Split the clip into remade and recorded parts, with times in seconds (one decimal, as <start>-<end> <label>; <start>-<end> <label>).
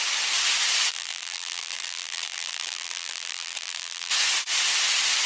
0.0-0.9 recorded; 0.9-4.1 remade; 4.1-5.3 recorded